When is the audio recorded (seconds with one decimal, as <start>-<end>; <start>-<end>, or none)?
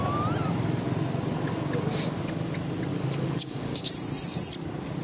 0.0-2.9; 3.9-5.0